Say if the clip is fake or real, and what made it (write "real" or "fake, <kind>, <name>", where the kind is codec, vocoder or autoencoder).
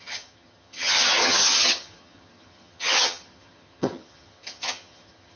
fake, vocoder, HiFi-GAN